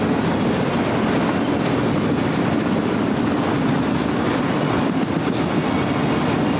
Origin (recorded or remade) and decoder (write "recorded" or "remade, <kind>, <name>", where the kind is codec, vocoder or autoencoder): recorded